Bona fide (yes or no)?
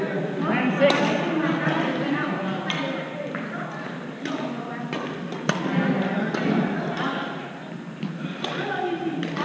yes